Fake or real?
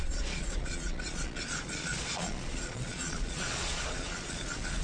fake